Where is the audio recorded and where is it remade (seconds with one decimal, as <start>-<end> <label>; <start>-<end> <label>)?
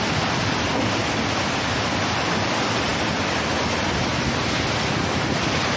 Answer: 0.0-5.8 recorded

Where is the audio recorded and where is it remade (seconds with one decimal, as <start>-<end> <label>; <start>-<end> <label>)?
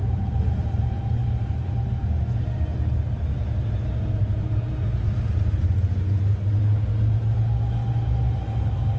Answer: 0.0-9.0 recorded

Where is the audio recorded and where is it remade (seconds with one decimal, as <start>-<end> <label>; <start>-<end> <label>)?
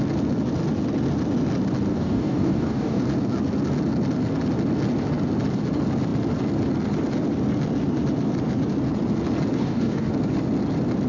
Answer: 0.0-1.9 recorded; 1.9-3.0 remade; 3.0-9.6 recorded; 9.6-10.1 remade; 10.1-11.1 recorded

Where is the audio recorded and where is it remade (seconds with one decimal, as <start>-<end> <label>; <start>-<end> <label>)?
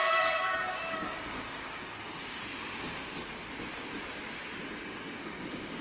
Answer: 0.0-2.4 remade; 2.4-4.6 recorded; 4.6-5.8 remade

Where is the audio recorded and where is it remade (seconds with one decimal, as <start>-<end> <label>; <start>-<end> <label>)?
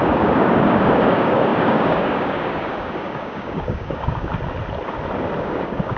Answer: 0.0-4.3 remade; 4.3-5.4 recorded; 5.4-6.0 remade